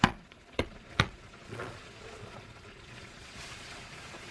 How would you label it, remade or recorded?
remade